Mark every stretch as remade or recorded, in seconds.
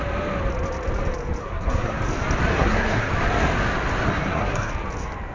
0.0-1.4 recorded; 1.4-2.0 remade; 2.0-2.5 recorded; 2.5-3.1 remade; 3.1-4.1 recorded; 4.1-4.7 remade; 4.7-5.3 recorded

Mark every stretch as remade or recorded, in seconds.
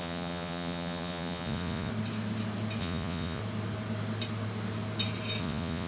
0.0-1.9 remade; 1.9-2.8 recorded; 2.8-3.4 remade; 3.4-5.4 recorded; 5.4-5.9 remade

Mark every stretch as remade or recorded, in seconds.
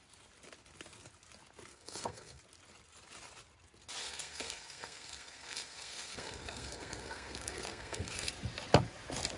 0.0-1.7 recorded; 1.7-2.4 remade; 2.4-4.0 recorded; 4.0-8.3 remade; 8.3-9.4 recorded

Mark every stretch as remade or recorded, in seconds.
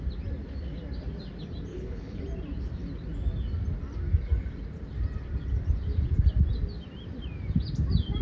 0.0-1.7 recorded; 1.7-2.2 remade; 2.2-8.2 recorded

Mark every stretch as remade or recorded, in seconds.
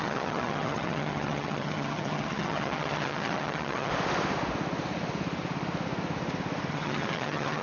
0.0-3.9 remade; 3.9-6.7 recorded; 6.7-7.6 remade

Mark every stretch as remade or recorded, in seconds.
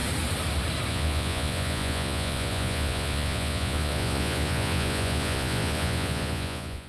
0.0-0.9 recorded; 0.9-6.9 remade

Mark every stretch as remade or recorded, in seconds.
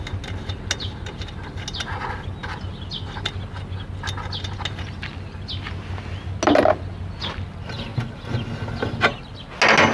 0.0-9.9 recorded